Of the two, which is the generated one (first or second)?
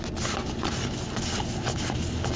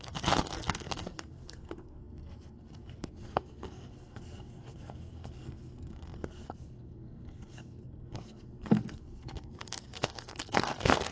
second